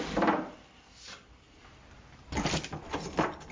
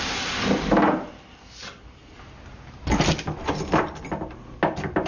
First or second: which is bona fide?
second